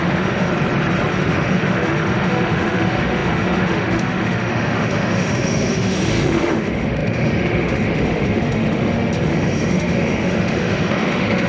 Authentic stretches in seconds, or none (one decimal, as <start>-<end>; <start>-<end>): 0.5-1.1